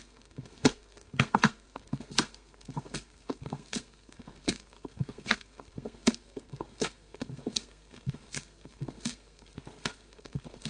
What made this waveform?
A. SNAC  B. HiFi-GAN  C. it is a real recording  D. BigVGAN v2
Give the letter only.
A